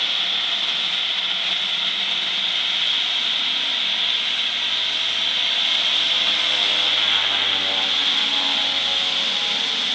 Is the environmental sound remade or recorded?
recorded